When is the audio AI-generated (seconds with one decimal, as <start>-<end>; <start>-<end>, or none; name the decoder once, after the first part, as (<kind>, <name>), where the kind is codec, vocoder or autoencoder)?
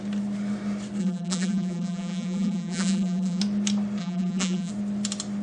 1.0-3.4 (vocoder, BigVGAN v2); 4.0-4.7